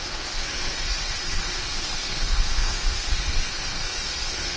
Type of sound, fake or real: fake